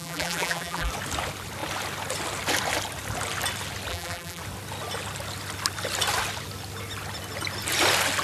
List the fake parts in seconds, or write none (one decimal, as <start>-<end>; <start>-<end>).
0.0-0.9; 3.9-4.4